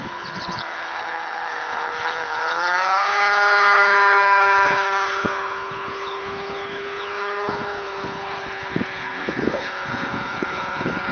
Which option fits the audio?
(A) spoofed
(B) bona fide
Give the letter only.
A